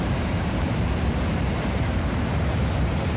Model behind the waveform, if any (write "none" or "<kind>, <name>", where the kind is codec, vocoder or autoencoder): vocoder, BigVGAN v2